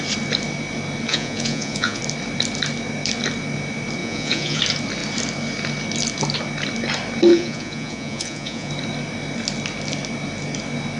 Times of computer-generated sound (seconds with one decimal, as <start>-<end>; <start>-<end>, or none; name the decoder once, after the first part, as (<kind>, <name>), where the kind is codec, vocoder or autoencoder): 1.1-2.0 (vocoder, Vocos); 4.0-4.6; 7.3-8.7